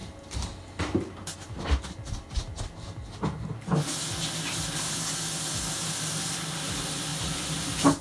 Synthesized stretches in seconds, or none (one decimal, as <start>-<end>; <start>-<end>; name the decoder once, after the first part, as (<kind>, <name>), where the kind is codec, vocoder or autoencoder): none